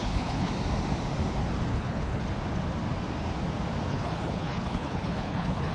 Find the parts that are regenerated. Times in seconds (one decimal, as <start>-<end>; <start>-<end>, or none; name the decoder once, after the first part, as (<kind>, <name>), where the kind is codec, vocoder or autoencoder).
0.0-0.5 (codec, HILCodec); 1.7-2.2; 3.9-5.7